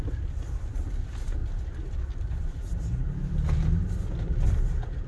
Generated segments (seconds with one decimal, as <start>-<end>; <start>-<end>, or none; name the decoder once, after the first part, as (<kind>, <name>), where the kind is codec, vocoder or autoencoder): none